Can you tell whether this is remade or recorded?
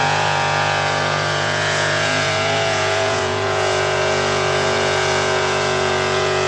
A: remade